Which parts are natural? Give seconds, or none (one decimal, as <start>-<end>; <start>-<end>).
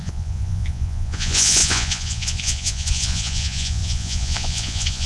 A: none